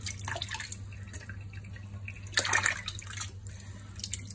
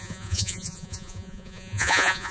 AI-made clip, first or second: second